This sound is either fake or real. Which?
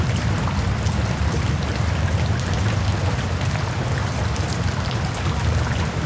fake